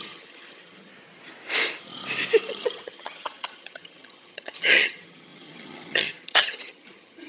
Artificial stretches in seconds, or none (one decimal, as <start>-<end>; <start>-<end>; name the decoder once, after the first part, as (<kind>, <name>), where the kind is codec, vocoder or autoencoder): 0.0-0.9 (vocoder, HiFi-GAN); 2.5-7.3